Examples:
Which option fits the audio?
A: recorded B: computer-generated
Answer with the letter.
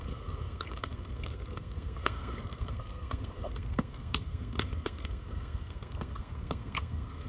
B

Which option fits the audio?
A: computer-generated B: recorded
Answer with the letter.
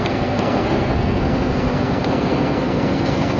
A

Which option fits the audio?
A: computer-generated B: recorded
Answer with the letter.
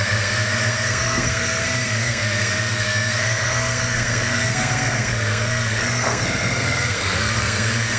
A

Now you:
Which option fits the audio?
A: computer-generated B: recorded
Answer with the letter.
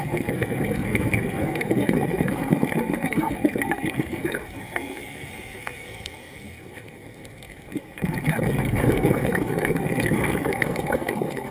A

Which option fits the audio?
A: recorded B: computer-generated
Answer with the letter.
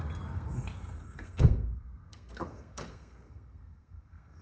B